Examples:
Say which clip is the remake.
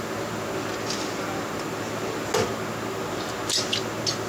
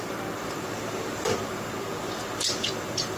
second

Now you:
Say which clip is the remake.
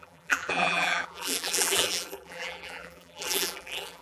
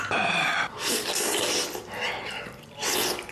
first